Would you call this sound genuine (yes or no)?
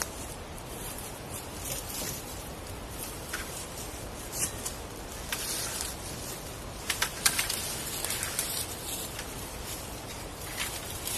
no